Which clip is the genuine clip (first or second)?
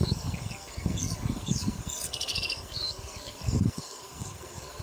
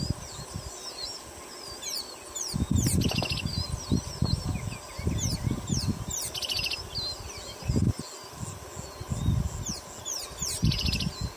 second